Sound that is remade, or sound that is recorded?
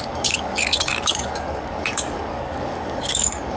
remade